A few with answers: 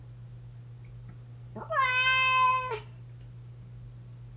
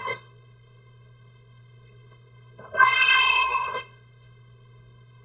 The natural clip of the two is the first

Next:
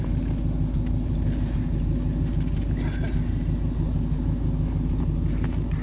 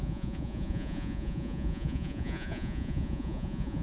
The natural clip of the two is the first